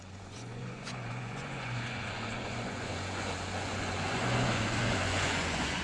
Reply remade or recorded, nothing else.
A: remade